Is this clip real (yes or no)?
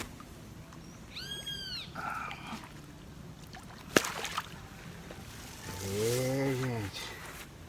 yes